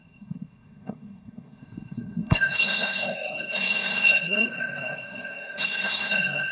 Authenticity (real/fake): fake